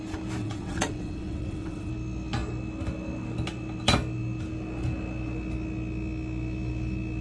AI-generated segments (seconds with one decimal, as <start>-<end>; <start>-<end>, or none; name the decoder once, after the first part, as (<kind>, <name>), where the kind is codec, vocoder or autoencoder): 0.4-1.9 (vocoder, WaveNeXt)